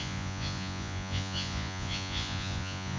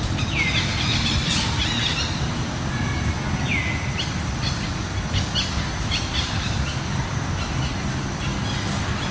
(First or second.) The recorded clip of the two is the second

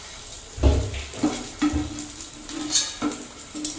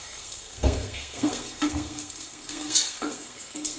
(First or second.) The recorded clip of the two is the first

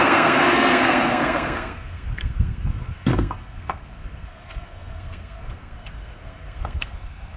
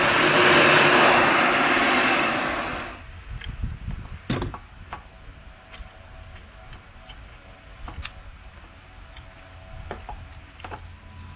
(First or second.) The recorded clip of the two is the second